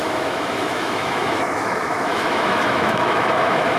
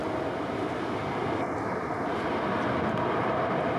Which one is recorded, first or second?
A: second